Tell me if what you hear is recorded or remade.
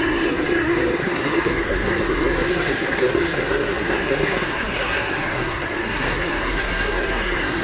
remade